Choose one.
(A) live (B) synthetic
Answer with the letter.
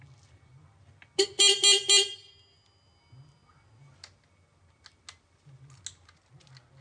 A